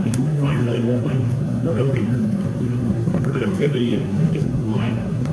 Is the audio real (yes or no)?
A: no